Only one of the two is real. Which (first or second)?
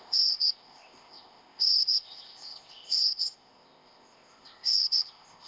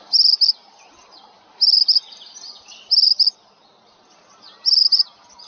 second